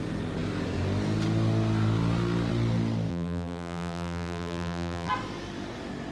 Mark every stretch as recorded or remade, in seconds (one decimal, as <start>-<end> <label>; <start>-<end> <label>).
0.0-3.1 recorded; 3.1-5.1 remade; 5.1-6.1 recorded